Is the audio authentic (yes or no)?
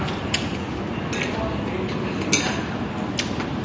yes